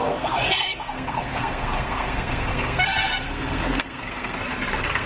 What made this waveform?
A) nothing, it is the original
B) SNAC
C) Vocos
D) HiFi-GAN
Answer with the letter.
B